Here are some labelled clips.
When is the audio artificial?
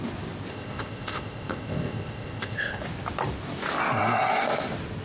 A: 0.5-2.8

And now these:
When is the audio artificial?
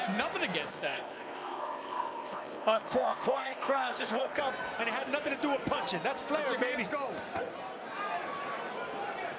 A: 0.7-4.4